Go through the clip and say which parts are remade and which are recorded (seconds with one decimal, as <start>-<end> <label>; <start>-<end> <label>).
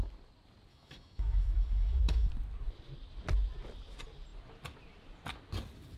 0.0-0.7 recorded; 0.7-2.3 remade; 2.3-6.0 recorded